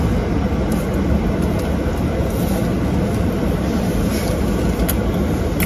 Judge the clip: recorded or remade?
recorded